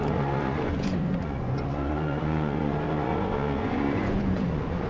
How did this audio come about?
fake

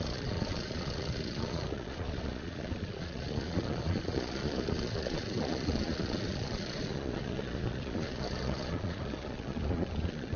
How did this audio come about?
fake